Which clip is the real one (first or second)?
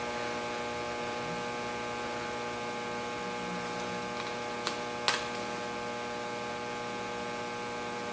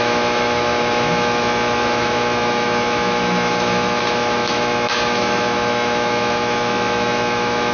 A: first